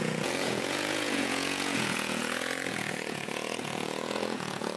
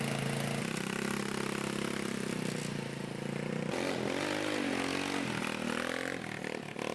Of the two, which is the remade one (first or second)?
first